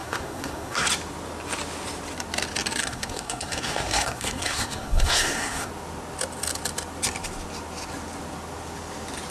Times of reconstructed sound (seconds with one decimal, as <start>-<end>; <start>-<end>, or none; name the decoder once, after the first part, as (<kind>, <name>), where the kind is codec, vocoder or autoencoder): 0.0-0.9 (codec, SNAC); 2.8-5.7